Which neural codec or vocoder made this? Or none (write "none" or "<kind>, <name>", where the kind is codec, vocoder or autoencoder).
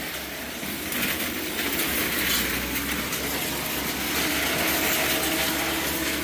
none